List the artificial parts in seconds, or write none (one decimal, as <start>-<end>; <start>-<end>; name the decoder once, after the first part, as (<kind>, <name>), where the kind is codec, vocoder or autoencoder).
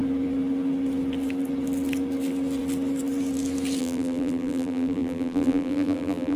3.8-6.4 (vocoder, BigVGAN v2)